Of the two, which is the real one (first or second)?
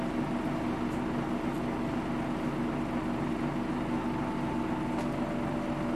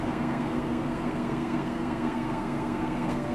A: first